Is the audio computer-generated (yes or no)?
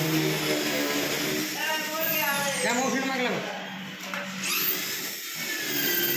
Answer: no